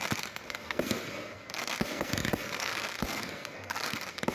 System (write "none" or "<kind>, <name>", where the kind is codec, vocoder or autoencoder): codec, SNAC